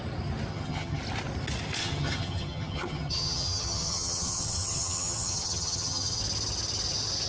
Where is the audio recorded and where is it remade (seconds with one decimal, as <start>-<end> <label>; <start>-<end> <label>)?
0.0-0.5 recorded; 0.5-1.0 remade; 1.0-1.8 recorded; 1.8-6.2 remade; 6.2-7.3 recorded